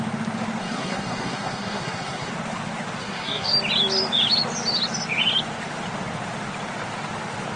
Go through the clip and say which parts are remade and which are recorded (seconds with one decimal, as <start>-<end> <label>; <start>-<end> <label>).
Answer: 0.0-0.6 recorded; 0.6-2.3 remade; 2.3-3.0 recorded; 3.0-3.5 remade; 3.5-7.6 recorded